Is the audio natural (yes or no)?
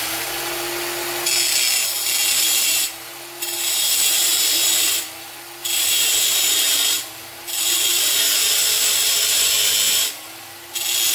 yes